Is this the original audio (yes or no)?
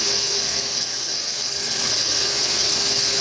no